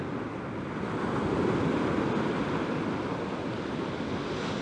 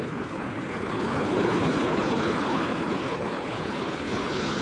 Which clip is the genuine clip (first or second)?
first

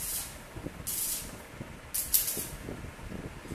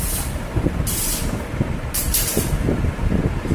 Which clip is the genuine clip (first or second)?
first